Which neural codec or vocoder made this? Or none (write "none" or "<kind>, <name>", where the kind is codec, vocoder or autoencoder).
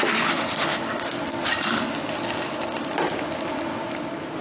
none